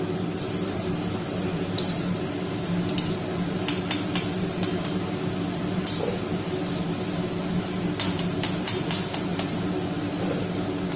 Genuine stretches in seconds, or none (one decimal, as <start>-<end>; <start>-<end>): 0.0-11.0